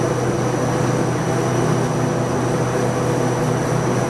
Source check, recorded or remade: recorded